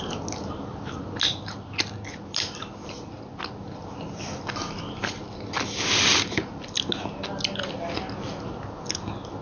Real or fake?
real